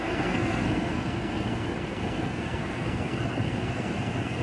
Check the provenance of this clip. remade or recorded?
remade